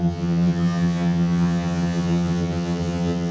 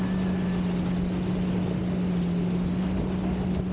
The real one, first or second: second